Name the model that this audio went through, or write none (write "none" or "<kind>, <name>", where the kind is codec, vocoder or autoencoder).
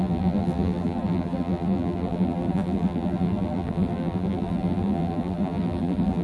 vocoder, BigVGAN v2